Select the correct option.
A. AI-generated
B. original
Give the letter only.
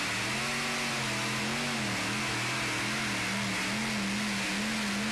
B